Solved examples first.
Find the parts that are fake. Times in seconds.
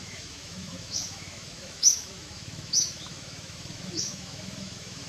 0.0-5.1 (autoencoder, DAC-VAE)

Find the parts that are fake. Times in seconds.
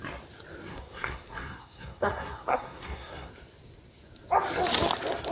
0.7-3.3 (codec, SNAC)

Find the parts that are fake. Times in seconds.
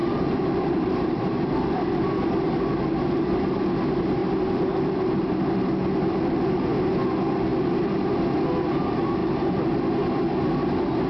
0.0-1.2 (vocoder, BigVGAN v2)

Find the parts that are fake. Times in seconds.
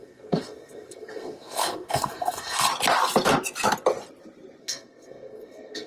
0.0-2.7 (codec, SNAC); 4.6-5.9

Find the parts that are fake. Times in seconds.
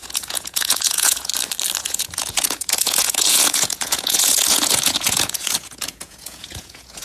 0.0-1.3 (vocoder, Vocos); 1.8-7.0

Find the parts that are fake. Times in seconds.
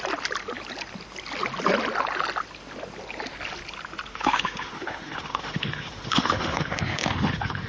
4.1-7.7 (autoencoder, DAC-VAE)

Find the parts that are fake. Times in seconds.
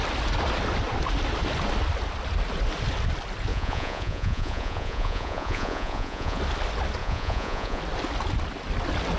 3.5-6.4 (vocoder, Vocos); 7.0-7.8